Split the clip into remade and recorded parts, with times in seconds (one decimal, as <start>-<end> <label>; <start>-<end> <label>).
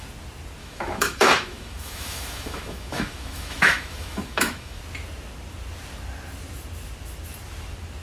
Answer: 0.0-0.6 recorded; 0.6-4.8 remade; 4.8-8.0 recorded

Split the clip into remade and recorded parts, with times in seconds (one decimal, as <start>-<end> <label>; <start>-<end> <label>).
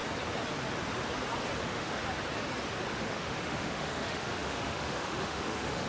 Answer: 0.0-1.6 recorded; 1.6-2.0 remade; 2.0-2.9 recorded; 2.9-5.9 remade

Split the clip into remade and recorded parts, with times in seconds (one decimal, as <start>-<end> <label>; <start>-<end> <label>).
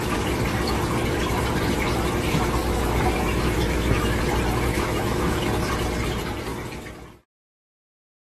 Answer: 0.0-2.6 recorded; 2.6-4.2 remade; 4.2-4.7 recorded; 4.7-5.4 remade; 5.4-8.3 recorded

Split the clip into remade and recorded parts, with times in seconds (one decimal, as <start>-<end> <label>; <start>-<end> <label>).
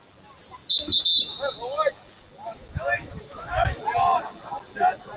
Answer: 0.0-2.5 recorded; 2.5-3.8 remade; 3.8-5.2 recorded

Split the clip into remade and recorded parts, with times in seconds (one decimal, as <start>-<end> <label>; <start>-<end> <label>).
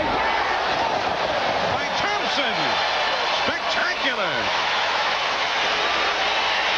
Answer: 0.0-3.8 recorded; 3.8-5.6 remade; 5.6-6.8 recorded